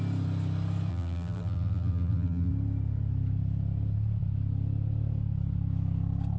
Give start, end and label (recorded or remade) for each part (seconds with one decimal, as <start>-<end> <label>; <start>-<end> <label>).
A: 0.0-0.9 recorded; 0.9-2.5 remade; 2.5-6.4 recorded

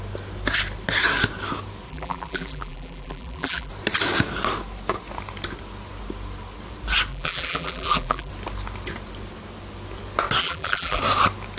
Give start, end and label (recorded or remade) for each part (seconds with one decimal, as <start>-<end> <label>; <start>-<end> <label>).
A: 0.0-1.9 recorded; 1.9-3.7 remade; 3.7-7.1 recorded; 7.1-8.3 remade; 8.3-10.4 recorded; 10.4-11.0 remade; 11.0-11.6 recorded

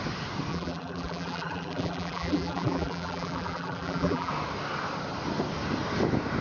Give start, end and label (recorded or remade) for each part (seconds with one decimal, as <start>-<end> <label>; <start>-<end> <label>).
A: 0.0-0.5 recorded; 0.5-4.3 remade; 4.3-6.4 recorded

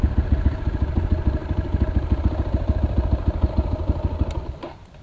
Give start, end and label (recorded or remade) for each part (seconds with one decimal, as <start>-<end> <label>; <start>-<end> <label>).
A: 0.0-1.4 remade; 1.4-2.2 recorded; 2.2-5.0 remade

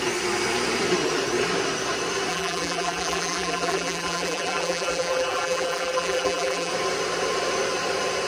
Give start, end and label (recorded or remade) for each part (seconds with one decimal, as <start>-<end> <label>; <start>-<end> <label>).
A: 0.0-2.3 recorded; 2.3-6.7 remade; 6.7-8.3 recorded

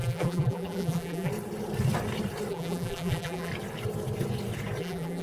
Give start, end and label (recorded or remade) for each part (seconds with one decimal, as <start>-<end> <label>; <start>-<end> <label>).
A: 0.0-1.3 remade; 1.3-2.5 recorded; 2.5-3.5 remade; 3.5-4.8 recorded; 4.8-5.2 remade

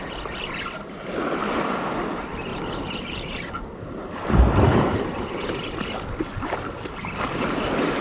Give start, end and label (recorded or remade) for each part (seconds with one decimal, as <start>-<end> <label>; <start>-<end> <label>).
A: 0.0-2.5 recorded; 2.5-3.5 remade; 3.5-8.0 recorded

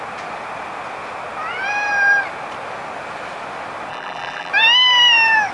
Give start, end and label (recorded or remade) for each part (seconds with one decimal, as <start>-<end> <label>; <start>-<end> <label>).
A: 0.0-3.9 recorded; 3.9-4.5 remade; 4.5-5.5 recorded